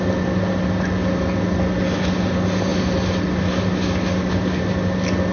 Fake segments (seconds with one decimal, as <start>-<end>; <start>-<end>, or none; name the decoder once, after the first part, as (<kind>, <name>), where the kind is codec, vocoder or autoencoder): none